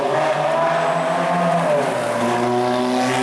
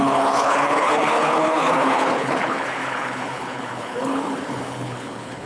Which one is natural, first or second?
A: first